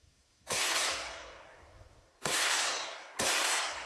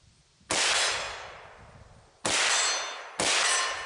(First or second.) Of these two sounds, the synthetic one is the first